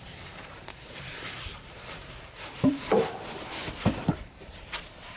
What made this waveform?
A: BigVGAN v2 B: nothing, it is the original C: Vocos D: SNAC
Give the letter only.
A